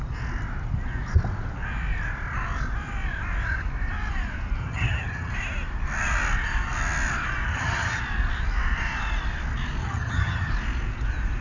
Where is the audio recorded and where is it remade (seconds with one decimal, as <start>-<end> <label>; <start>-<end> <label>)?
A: 0.0-4.6 recorded; 4.6-5.3 remade; 5.3-7.5 recorded; 7.5-8.0 remade; 8.0-9.8 recorded; 9.8-10.5 remade; 10.5-11.4 recorded

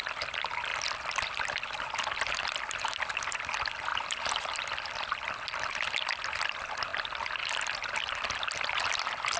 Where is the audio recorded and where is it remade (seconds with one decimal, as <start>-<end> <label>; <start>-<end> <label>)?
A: 0.0-9.4 recorded